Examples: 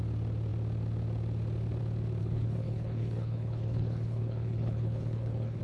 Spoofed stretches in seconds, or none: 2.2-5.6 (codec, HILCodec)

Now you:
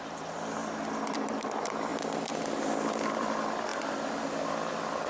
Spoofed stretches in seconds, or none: 0.0-1.9 (vocoder, BigVGAN v2); 2.8-5.1

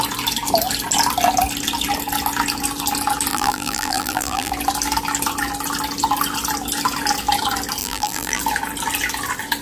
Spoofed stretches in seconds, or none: 3.3-4.5 (vocoder, BigVGAN v2); 7.8-8.4

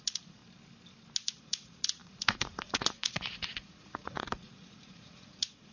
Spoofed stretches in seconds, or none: 0.0-0.4 (vocoder, Vocos); 1.4-5.7